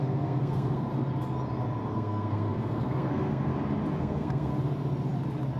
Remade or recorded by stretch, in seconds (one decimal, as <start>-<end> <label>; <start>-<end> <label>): 0.0-0.9 remade; 0.9-1.9 recorded; 1.9-3.5 remade; 3.5-4.0 recorded; 4.0-4.5 remade; 4.5-5.6 recorded